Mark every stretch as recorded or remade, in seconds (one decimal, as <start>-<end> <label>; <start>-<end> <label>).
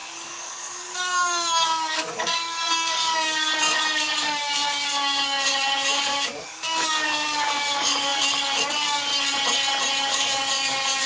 0.0-9.1 remade; 9.1-10.0 recorded; 10.0-11.1 remade